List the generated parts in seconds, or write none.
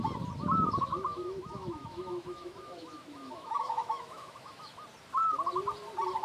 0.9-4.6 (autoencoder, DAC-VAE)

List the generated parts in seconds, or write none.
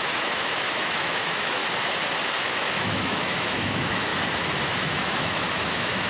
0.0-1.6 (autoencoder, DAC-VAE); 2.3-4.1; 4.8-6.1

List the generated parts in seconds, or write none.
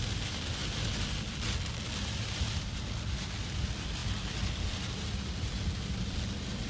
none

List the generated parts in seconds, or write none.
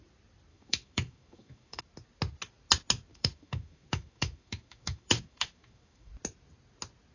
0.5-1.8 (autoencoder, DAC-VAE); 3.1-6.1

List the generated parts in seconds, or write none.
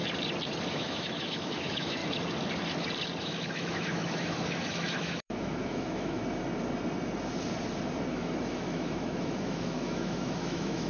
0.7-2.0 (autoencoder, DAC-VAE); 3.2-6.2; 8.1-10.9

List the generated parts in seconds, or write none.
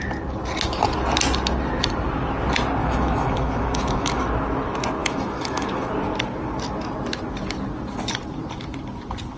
2.8-4.2 (autoencoder, DAC-VAE); 5.0-5.9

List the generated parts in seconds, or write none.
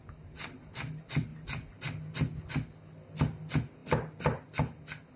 none